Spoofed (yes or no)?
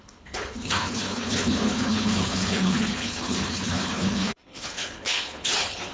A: yes